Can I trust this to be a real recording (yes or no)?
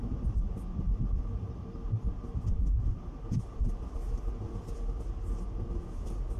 yes